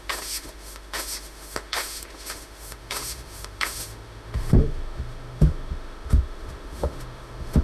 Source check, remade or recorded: remade